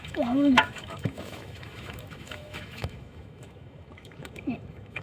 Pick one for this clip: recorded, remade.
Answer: remade